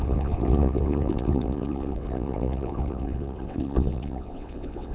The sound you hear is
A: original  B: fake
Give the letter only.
B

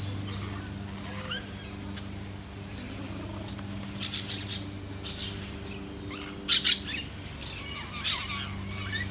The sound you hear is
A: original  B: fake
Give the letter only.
A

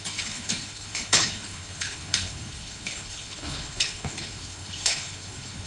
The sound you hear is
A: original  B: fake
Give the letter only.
B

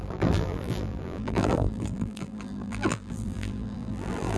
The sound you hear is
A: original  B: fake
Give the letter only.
B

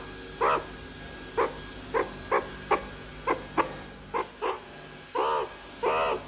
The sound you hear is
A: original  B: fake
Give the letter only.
A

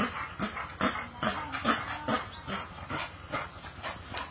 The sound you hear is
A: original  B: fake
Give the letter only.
A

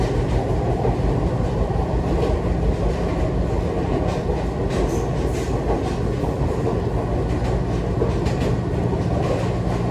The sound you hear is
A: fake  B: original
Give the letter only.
B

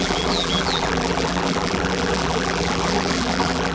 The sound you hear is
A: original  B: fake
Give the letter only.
B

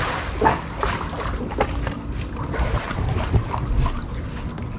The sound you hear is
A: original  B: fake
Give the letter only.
A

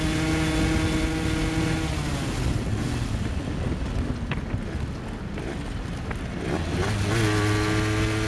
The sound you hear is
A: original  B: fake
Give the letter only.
A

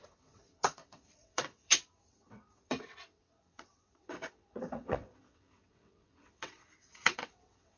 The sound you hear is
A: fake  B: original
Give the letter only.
A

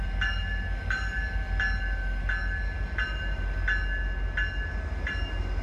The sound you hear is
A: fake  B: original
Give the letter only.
B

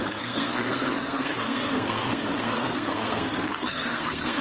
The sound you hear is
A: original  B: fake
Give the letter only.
B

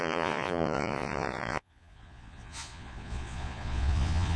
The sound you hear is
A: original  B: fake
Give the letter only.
B